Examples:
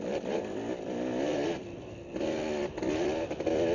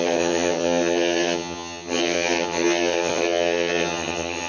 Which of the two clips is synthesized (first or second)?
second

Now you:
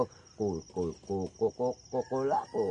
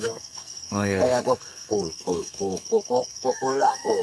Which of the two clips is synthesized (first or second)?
second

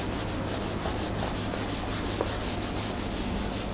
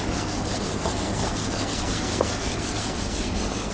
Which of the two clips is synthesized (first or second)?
second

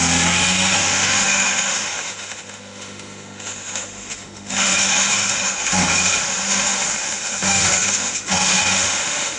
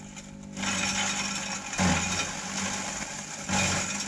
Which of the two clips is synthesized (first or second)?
first